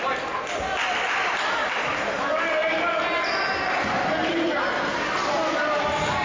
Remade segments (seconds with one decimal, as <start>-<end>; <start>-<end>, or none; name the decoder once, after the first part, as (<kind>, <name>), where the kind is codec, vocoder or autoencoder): none